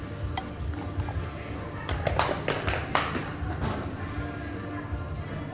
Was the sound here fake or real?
real